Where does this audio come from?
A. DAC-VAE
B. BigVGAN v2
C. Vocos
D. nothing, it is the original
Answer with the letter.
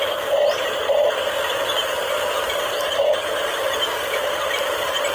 B